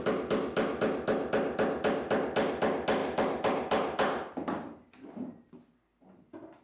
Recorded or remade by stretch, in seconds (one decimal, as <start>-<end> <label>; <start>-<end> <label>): 0.0-3.0 recorded; 3.0-5.5 remade; 5.5-6.6 recorded